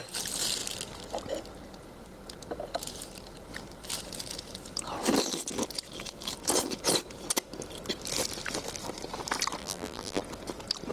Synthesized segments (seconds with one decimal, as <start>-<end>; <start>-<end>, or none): 9.6-10.2